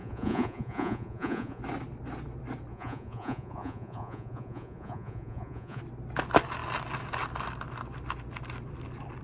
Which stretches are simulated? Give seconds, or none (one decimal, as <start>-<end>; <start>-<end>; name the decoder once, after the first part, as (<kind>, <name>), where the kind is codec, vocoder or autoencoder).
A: 0.0-1.6 (vocoder, Vocos); 2.7-5.8